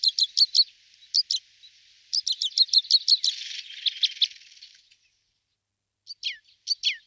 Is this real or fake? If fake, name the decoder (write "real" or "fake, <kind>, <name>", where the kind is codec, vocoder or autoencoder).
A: real